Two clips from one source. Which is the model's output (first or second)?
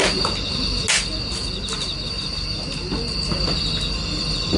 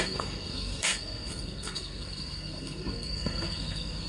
second